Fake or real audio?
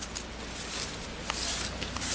real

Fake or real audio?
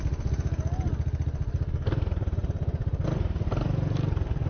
real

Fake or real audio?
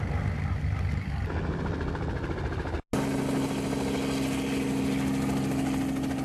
real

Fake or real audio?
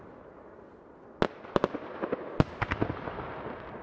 real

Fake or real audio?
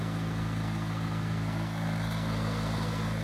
fake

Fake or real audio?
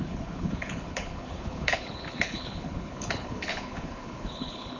fake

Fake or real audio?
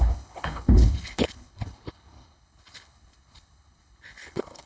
fake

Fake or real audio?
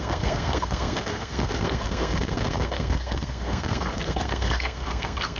fake